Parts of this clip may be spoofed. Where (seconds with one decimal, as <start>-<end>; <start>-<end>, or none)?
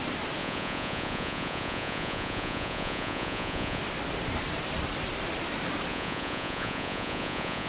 0.4-3.8; 5.9-7.7